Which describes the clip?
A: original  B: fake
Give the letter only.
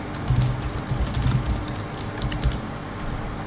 A